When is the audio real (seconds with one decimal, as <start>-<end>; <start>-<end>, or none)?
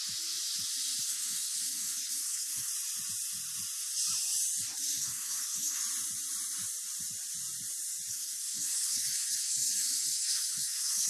0.0-1.0; 2.7-4.8; 5.8-8.1